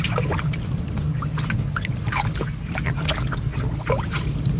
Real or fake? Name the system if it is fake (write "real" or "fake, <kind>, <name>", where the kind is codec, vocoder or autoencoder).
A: real